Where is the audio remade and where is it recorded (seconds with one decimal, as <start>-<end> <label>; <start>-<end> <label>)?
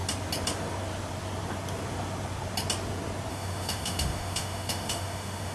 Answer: 0.0-3.3 recorded; 3.3-5.5 remade